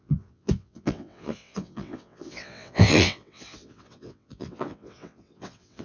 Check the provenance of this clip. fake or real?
fake